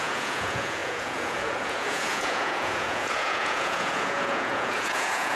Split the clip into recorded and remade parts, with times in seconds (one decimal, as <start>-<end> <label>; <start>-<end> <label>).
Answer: 0.0-5.4 remade